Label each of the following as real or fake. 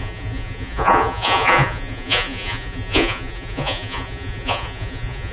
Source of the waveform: fake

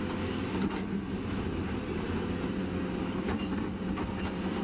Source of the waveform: real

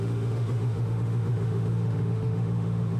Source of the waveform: fake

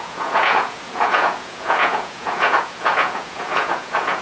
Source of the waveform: fake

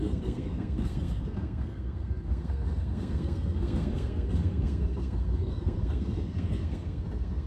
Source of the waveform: fake